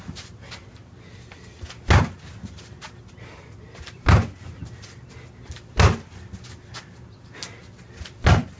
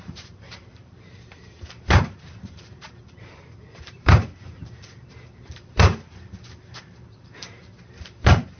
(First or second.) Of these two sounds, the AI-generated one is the second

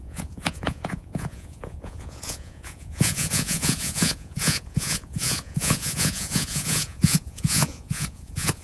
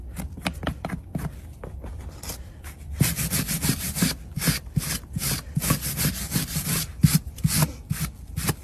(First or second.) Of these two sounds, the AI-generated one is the first